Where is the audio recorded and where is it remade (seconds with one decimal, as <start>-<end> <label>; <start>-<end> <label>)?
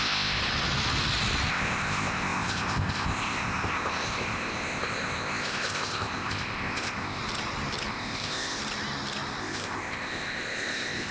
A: 0.0-0.4 remade; 0.4-1.5 recorded; 1.5-7.2 remade; 7.2-7.9 recorded; 7.9-8.6 remade; 8.6-9.4 recorded; 9.4-11.1 remade